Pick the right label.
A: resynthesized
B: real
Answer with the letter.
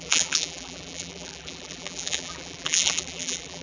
A